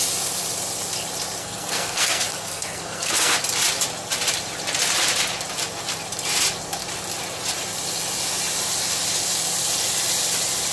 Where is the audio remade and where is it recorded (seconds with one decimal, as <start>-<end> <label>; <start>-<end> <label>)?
0.0-1.4 recorded; 1.4-3.4 remade; 3.4-10.7 recorded

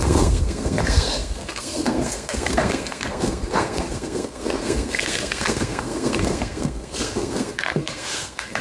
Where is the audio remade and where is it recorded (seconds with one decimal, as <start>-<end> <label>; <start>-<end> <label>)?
0.0-8.6 remade

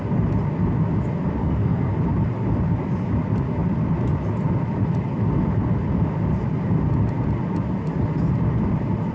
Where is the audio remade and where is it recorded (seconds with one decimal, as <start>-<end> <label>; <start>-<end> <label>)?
0.0-1.4 recorded; 1.4-1.9 remade; 1.9-9.1 recorded

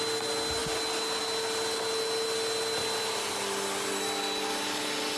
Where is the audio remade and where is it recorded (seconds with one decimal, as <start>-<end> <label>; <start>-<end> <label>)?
0.0-5.2 recorded

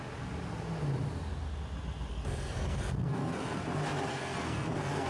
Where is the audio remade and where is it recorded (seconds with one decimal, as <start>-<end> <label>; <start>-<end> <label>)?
0.0-2.1 recorded; 2.1-3.6 remade; 3.6-4.1 recorded; 4.1-5.1 remade

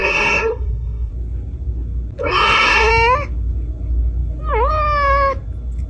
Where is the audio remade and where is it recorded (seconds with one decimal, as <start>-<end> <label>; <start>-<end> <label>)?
0.0-1.1 remade; 1.1-2.2 recorded; 2.2-2.9 remade; 2.9-5.9 recorded